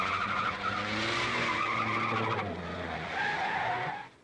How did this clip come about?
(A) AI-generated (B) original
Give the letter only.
A